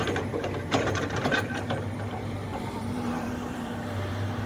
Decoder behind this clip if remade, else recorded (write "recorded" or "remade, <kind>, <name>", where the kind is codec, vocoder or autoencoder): remade, vocoder, BigVGAN v2